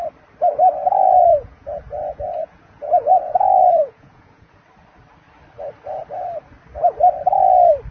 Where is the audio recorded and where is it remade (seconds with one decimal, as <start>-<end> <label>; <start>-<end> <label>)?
0.0-1.3 recorded; 1.3-4.5 remade; 4.5-7.9 recorded